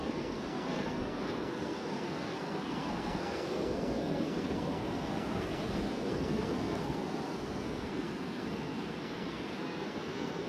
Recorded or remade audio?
remade